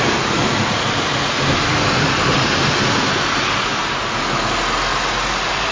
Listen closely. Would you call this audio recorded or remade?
recorded